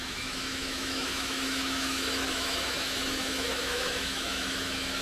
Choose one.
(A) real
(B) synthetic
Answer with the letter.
B